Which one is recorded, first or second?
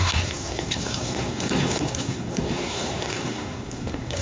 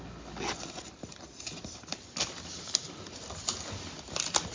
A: second